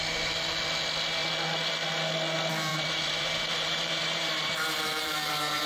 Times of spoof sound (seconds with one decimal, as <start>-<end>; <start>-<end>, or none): 2.7-5.3